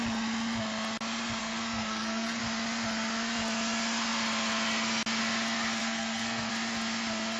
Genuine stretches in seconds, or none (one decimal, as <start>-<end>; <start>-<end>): 0.0-1.4; 2.4-5.8; 6.5-7.4